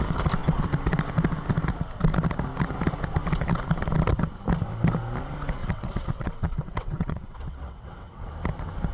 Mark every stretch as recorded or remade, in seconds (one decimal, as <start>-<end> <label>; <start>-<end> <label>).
0.0-5.6 recorded; 5.6-8.3 remade; 8.3-8.9 recorded